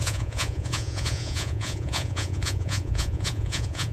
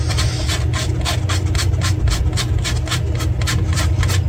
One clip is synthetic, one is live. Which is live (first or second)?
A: second